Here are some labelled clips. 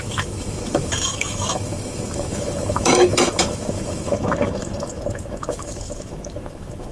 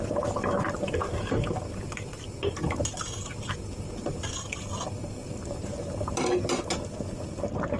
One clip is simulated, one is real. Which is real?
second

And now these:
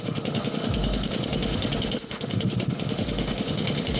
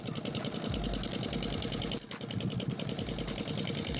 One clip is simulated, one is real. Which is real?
second